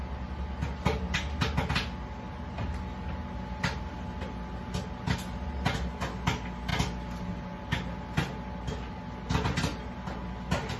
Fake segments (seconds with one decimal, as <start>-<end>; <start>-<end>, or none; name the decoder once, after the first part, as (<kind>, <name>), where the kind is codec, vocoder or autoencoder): none